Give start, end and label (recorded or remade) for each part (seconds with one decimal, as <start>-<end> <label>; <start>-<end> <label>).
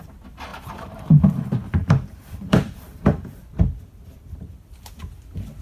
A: 0.0-0.5 recorded; 0.5-3.4 remade; 3.4-5.6 recorded